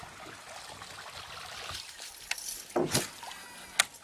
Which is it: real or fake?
real